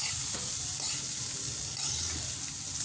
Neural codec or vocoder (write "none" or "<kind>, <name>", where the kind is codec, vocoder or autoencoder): none